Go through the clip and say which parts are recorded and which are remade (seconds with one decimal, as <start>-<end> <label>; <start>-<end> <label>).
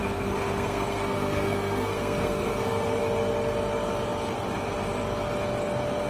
0.0-3.0 remade; 3.0-6.1 recorded